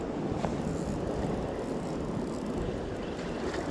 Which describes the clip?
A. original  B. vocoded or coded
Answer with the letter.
A